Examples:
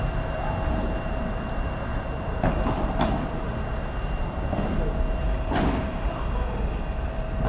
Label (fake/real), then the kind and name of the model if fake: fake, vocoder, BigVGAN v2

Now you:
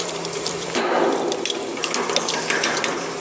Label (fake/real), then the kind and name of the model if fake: fake, vocoder, BigVGAN v2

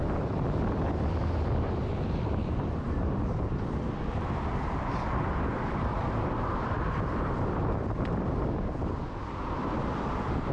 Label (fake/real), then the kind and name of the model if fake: fake, vocoder, BigVGAN v2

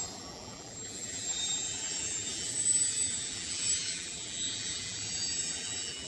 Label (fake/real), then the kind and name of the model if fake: fake, vocoder, BigVGAN v2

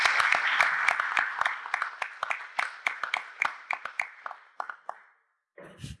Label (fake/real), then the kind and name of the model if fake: real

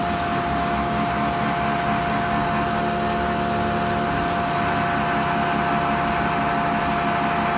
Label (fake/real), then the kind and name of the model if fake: real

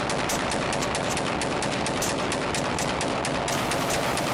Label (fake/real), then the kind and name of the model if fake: real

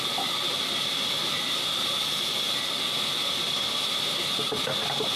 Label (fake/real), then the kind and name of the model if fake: real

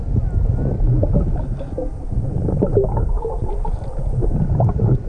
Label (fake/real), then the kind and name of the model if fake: real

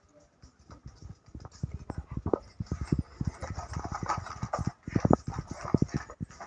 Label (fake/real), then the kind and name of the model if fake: real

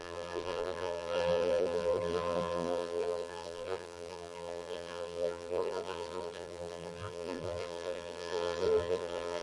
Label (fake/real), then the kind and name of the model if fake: fake, vocoder, BigVGAN v2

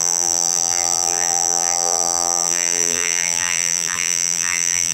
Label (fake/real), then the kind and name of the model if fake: fake, vocoder, BigVGAN v2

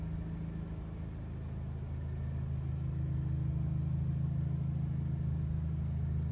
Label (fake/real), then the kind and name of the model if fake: real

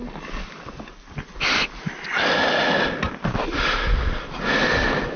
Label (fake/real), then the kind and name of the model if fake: real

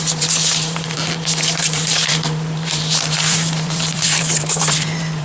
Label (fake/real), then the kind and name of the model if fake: fake, vocoder, BigVGAN v2